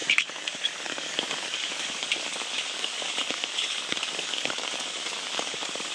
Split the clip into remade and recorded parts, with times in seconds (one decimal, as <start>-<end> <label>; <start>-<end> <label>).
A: 0.0-5.9 remade